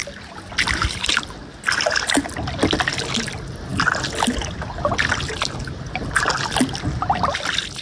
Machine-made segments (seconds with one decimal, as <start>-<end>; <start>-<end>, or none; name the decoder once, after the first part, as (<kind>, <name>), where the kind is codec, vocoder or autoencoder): 0.0-1.5 (vocoder, BigVGAN v2)